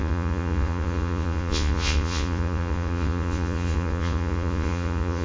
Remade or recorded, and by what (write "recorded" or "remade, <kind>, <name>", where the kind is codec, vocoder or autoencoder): remade, vocoder, Vocos